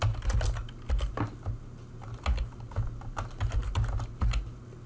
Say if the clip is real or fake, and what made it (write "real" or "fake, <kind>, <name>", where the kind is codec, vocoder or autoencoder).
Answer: real